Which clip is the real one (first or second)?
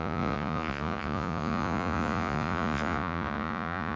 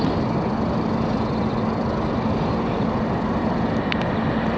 second